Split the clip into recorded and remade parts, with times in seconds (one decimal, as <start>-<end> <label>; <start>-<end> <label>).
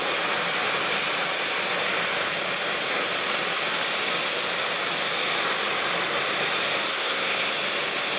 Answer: 0.0-6.9 recorded; 6.9-7.5 remade; 7.5-8.2 recorded